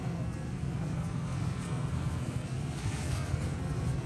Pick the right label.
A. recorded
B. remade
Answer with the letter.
B